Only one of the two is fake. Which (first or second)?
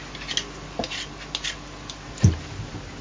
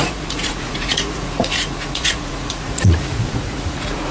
second